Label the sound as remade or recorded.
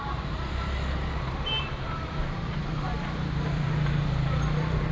remade